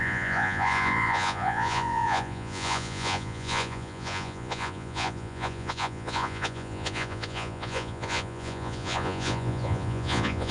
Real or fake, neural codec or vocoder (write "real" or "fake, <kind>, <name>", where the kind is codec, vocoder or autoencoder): fake, vocoder, Vocos